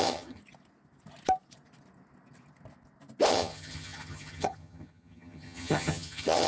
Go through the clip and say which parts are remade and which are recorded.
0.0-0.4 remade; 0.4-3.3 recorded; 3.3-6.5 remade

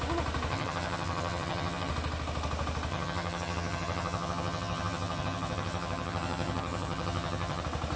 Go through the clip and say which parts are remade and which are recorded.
0.0-0.5 recorded; 0.5-1.9 remade; 1.9-2.9 recorded; 2.9-7.6 remade; 7.6-8.0 recorded

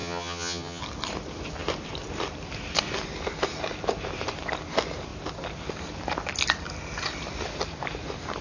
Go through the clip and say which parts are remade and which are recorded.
0.0-0.8 remade; 0.8-8.4 recorded

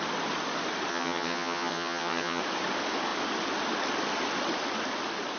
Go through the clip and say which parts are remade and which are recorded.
0.0-0.9 recorded; 0.9-2.4 remade; 2.4-5.4 recorded

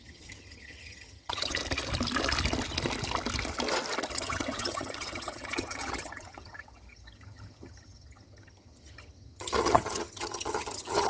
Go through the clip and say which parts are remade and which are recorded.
0.0-1.6 remade; 1.6-4.1 recorded; 4.1-11.1 remade

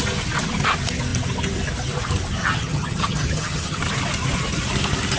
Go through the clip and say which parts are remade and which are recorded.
0.0-2.4 recorded; 2.4-3.8 remade; 3.8-5.2 recorded

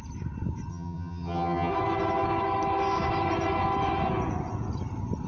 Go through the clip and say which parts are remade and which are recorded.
0.0-0.7 recorded; 0.7-1.7 remade; 1.7-5.3 recorded